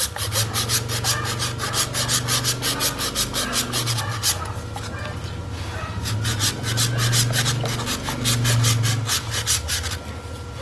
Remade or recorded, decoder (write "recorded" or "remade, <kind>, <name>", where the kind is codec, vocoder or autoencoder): recorded